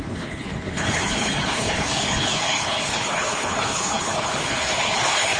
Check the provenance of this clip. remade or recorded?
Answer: remade